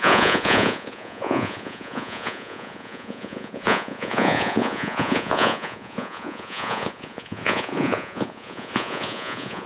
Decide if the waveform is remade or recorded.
remade